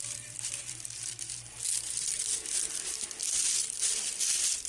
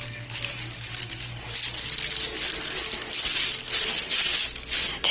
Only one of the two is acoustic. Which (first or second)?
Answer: second